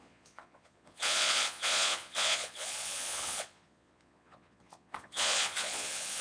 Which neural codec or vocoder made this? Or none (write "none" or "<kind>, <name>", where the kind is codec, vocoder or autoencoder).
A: vocoder, Vocos